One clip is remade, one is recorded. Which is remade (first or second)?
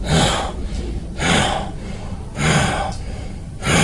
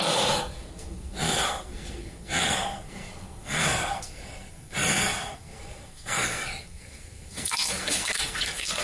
second